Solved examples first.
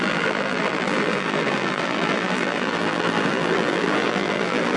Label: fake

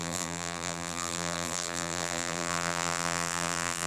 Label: fake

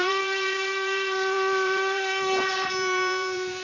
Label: fake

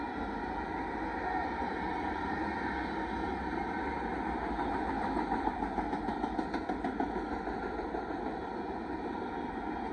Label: real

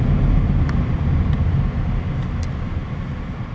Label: real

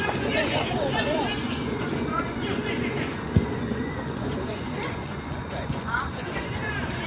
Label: fake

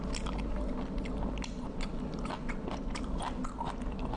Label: real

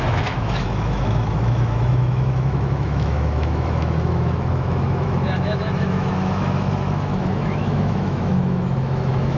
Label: fake